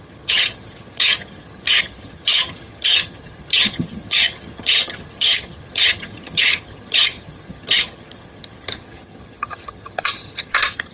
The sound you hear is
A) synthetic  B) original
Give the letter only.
A